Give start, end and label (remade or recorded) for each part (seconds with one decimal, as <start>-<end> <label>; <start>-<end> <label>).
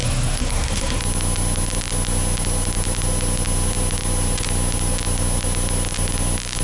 0.0-1.0 remade; 1.0-6.6 recorded